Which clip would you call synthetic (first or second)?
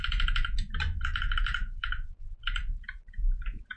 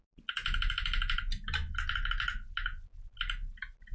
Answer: first